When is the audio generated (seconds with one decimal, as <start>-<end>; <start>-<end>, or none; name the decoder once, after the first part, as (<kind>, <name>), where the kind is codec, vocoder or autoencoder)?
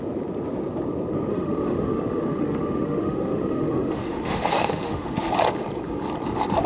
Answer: 1.3-5.3 (autoencoder, DAC-VAE)